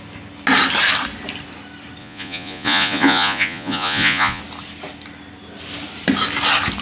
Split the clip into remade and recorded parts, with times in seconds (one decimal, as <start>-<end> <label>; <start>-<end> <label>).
0.0-2.0 recorded; 2.0-4.4 remade; 4.4-6.8 recorded